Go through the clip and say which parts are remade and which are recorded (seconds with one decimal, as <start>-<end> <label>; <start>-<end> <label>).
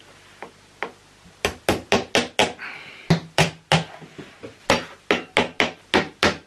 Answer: 0.0-6.5 recorded